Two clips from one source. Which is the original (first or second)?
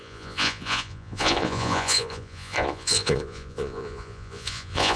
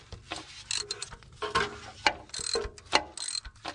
second